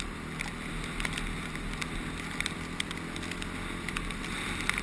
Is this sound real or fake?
real